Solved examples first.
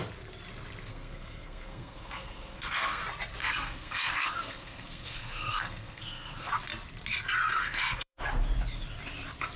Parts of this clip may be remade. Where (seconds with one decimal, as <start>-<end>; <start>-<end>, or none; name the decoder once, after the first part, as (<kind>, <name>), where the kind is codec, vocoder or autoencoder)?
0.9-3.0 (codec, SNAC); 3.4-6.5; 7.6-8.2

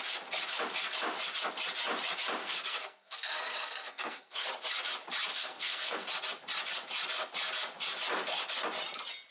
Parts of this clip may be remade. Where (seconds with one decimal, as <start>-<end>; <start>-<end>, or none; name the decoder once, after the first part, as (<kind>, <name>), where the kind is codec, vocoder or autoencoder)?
2.4-4.5 (codec, SNAC); 5.3-6.1

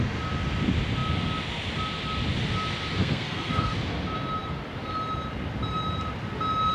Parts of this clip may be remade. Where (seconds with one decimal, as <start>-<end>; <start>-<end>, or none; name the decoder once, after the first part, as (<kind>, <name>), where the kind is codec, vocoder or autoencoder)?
3.0-3.7 (codec, SNAC)

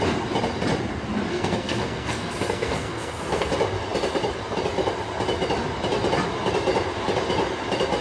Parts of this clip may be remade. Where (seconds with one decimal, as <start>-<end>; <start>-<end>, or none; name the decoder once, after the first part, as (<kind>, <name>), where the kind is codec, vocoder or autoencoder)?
1.3-3.5 (codec, SNAC)

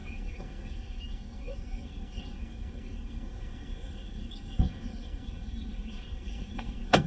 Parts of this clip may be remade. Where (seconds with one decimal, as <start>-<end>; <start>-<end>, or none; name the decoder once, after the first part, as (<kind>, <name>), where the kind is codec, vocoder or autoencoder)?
0.0-7.1 (codec, SNAC)

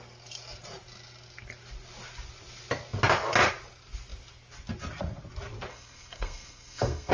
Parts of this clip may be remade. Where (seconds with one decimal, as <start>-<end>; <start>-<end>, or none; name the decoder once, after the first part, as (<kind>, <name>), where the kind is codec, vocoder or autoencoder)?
5.7-7.1 (codec, SNAC)

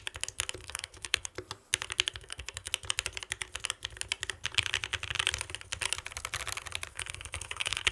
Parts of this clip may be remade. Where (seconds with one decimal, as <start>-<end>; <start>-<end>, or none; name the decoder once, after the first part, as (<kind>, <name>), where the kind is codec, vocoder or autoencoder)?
0.6-1.3 (codec, SNAC); 2.1-2.7; 6.9-7.9